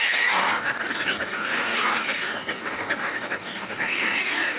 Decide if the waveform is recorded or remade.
remade